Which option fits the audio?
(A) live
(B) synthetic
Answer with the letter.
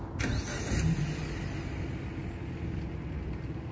A